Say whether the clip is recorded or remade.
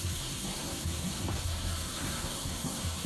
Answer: remade